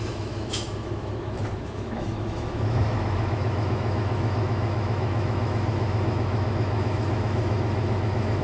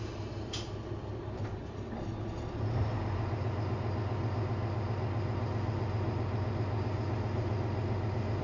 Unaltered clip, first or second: second